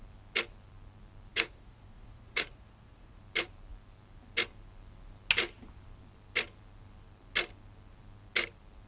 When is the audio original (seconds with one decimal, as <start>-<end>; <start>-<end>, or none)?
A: 0.0-1.3; 3.2-8.9

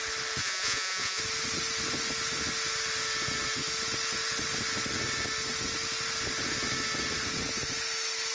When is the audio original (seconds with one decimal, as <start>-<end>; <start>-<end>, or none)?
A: 0.0-0.4; 1.2-8.3

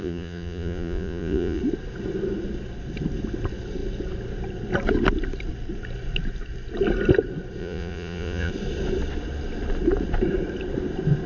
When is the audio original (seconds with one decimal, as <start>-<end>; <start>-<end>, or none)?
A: 1.6-7.6; 8.5-11.3

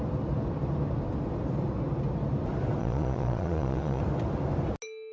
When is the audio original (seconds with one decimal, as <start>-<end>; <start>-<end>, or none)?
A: 0.0-2.8; 4.0-5.1

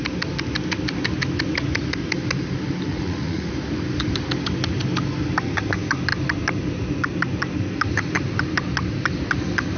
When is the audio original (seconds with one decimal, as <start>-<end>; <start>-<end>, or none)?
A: 0.0-2.9; 3.5-9.8

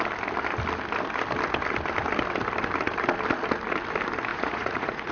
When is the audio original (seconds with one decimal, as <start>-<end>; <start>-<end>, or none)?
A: 0.0-4.3

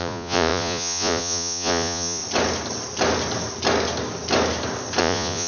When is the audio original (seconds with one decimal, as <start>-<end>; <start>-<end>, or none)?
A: 2.2-5.0